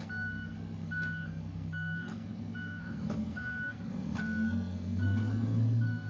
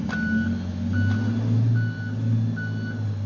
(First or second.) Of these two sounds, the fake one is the first